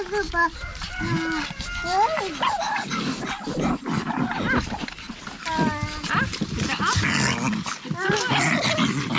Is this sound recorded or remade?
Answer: recorded